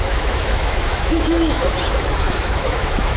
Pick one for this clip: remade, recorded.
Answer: remade